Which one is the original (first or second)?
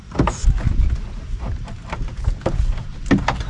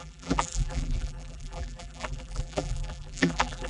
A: first